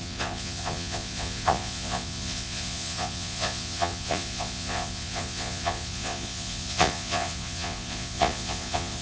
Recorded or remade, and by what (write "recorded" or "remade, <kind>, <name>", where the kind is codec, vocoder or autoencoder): remade, vocoder, Vocos